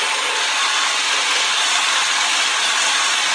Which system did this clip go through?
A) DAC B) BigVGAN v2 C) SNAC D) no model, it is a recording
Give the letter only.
D